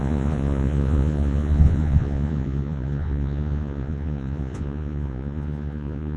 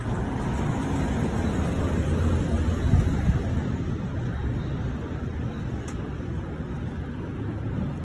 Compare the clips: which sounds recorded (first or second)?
second